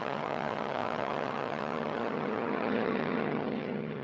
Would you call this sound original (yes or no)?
no